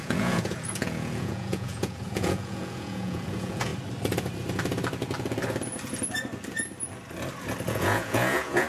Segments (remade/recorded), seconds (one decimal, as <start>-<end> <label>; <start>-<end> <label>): 0.0-3.7 remade; 3.7-7.7 recorded; 7.7-8.7 remade